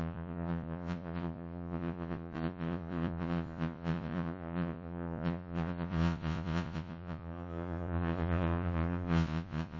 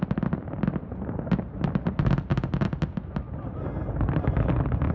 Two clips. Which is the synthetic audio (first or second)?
first